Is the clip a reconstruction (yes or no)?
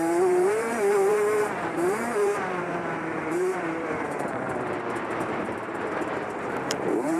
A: yes